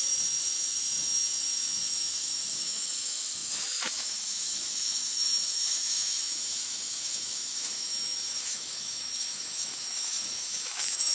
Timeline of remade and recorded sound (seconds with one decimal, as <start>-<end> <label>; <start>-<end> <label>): 0.0-11.1 remade